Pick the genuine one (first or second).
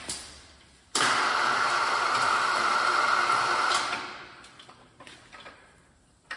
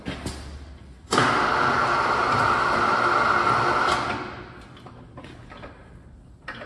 second